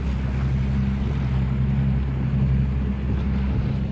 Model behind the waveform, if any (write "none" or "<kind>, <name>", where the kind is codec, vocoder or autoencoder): none